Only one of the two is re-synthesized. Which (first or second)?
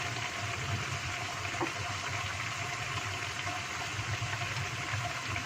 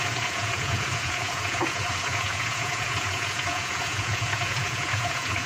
second